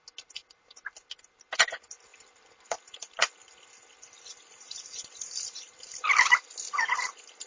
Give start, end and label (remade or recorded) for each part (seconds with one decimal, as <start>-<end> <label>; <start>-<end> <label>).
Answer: 0.0-2.1 recorded; 2.1-6.0 remade; 6.0-7.5 recorded